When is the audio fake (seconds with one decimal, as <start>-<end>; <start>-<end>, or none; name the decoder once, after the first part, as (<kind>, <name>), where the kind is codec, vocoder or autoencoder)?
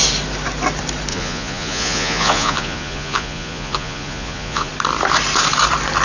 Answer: 1.1-4.7 (vocoder, Vocos)